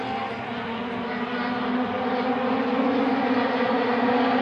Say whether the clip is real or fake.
real